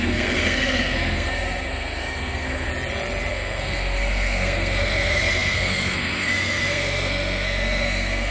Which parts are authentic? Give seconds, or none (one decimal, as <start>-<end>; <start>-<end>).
2.7-3.3